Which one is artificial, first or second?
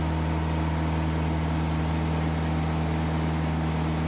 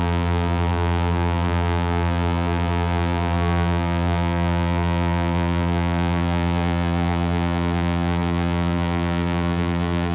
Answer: second